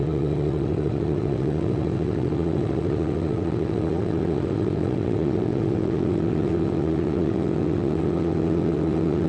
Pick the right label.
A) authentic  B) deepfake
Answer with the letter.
B